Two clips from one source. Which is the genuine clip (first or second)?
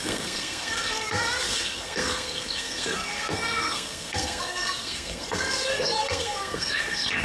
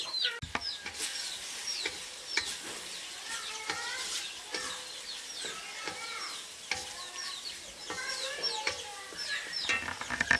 second